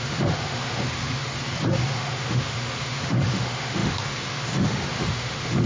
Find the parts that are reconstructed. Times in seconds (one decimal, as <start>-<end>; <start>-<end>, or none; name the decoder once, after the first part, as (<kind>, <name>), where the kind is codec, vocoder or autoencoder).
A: 0.0-1.3 (autoencoder, DAC-VAE); 1.9-5.7